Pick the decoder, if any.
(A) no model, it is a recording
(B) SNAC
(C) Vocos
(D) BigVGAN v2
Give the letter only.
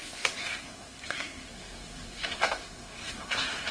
B